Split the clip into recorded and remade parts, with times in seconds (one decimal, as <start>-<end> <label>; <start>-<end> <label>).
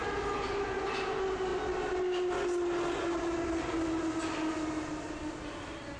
0.0-6.0 recorded